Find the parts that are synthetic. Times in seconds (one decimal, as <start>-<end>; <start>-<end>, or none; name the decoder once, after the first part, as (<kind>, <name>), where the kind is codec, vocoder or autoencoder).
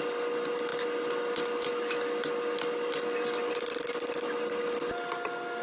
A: none